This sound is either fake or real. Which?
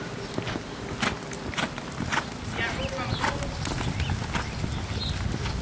real